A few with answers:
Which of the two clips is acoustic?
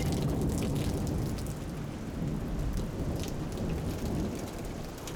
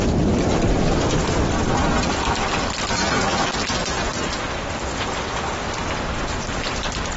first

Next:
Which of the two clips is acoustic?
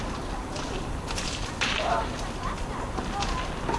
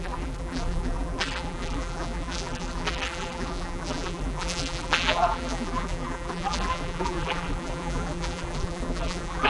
first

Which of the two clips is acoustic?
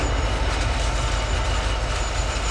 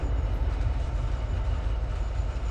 first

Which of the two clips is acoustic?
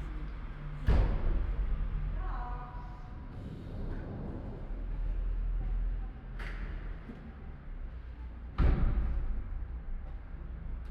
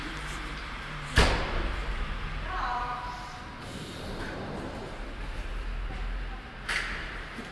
first